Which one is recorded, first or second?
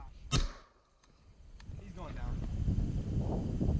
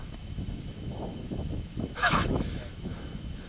first